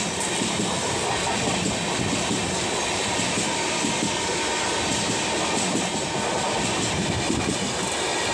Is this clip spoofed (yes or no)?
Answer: no